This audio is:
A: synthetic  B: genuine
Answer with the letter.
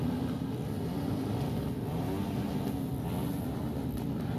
B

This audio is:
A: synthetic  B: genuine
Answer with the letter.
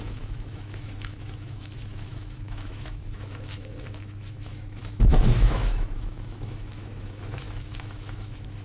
A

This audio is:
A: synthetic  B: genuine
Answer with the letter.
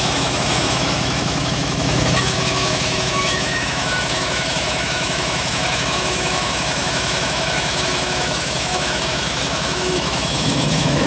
A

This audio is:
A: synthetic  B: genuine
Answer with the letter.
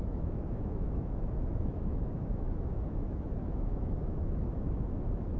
A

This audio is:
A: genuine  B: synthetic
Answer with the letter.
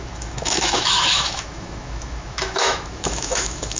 B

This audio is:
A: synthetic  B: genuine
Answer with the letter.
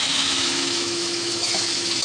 A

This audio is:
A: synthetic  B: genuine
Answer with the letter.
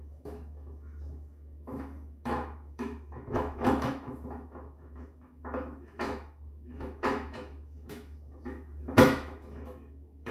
A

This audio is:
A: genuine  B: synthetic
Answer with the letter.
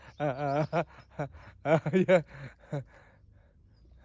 A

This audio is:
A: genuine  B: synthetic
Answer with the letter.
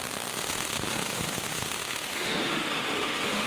B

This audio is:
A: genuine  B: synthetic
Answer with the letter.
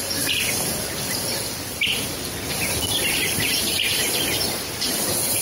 A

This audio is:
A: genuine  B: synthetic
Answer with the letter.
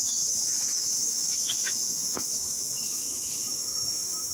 B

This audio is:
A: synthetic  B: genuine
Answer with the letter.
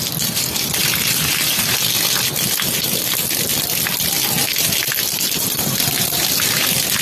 B